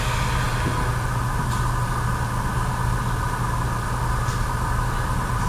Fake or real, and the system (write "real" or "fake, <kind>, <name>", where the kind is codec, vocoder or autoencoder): real